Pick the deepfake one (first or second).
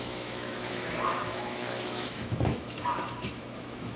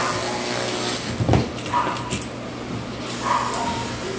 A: first